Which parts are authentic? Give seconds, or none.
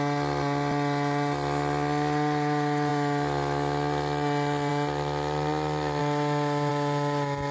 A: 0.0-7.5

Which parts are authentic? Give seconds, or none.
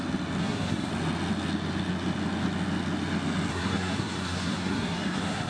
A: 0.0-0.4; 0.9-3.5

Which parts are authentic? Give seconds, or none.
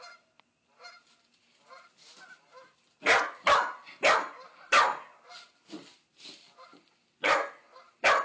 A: 0.0-8.2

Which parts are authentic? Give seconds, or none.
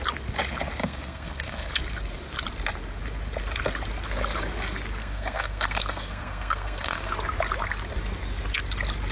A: 0.0-0.8; 1.7-5.0; 7.1-9.1